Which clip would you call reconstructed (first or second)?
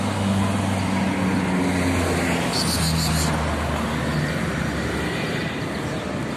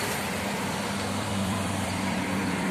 second